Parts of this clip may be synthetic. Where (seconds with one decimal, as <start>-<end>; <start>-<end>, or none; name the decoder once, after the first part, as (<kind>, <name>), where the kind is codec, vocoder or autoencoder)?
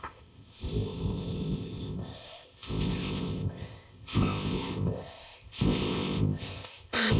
0.0-7.2 (codec, ZipCodec)